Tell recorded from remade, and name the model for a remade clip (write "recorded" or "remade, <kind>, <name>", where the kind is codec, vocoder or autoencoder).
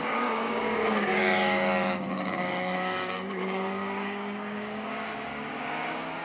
remade, codec, DAC